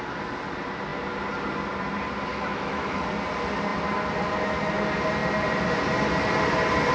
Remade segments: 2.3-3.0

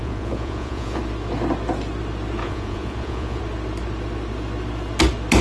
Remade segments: 0.0-1.0; 2.4-3.4